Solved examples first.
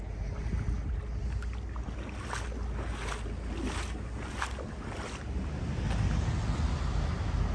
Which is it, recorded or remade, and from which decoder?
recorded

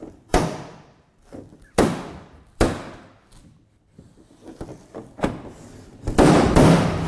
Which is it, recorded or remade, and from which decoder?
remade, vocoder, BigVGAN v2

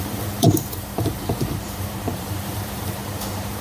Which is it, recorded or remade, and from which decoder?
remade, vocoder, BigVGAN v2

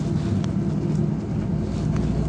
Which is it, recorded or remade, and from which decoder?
recorded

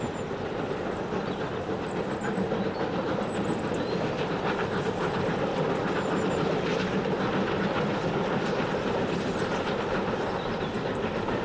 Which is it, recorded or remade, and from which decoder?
recorded